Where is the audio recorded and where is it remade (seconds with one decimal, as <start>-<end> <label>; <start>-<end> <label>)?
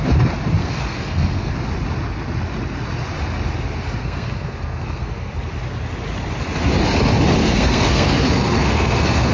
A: 0.0-0.6 recorded; 0.6-1.5 remade; 1.5-4.0 recorded; 4.0-5.3 remade; 5.3-7.4 recorded; 7.4-9.3 remade